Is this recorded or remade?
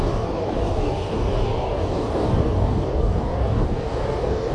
remade